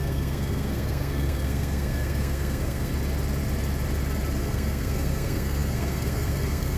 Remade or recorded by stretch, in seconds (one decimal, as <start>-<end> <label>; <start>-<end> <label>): 0.0-2.9 remade; 2.9-4.4 recorded; 4.4-6.8 remade